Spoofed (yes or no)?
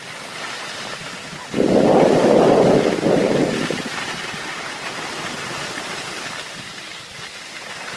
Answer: no